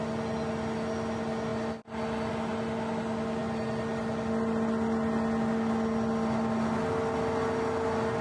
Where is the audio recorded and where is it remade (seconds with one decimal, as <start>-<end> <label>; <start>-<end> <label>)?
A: 0.0-8.2 recorded